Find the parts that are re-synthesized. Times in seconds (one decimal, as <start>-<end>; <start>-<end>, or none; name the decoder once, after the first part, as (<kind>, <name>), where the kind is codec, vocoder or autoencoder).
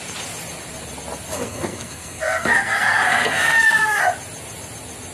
1.3-4.0 (codec, SNAC)